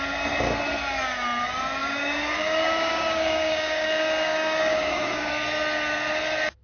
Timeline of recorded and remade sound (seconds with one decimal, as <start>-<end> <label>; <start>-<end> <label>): 0.0-1.8 recorded; 1.8-5.3 remade; 5.3-6.6 recorded